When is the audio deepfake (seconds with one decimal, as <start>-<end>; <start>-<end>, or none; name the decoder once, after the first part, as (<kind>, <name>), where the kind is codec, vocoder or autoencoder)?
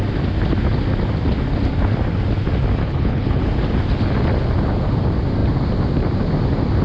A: 2.8-3.4 (codec, HILCodec)